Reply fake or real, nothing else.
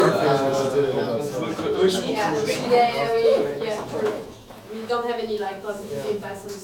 fake